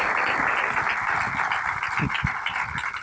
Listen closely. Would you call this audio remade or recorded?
recorded